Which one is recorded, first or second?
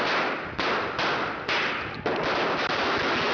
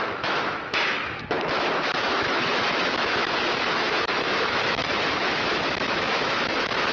first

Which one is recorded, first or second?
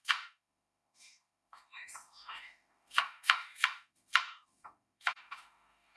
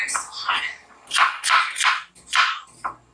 second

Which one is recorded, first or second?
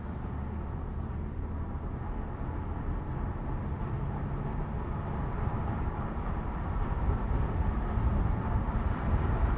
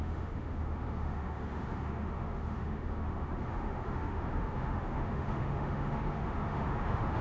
first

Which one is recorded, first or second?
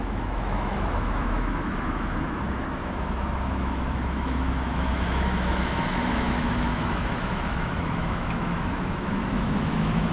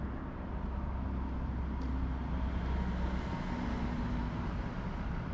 second